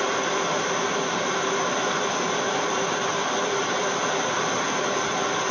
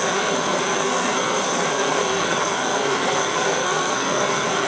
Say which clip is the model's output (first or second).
second